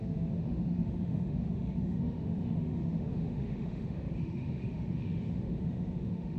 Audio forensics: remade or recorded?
remade